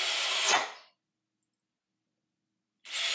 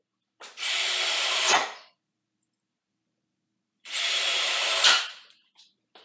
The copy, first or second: second